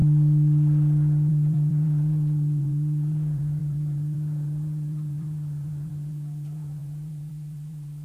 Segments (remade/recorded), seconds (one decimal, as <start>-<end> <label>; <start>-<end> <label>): 0.0-1.3 recorded; 1.3-8.0 remade